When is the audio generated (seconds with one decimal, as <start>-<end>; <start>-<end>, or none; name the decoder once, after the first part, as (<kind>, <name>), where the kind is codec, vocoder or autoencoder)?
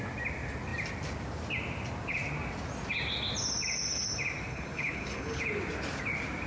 4.5-5.4 (codec, HILCodec)